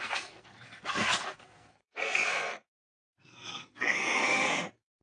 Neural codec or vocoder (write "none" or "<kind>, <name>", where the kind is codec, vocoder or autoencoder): codec, SNAC